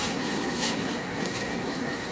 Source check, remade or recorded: remade